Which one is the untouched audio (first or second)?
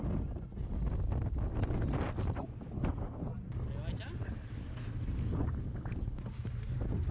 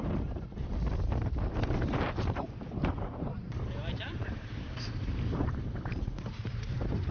first